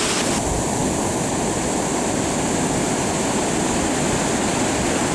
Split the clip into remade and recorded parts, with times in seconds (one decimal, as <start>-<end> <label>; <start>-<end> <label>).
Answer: 0.0-5.1 recorded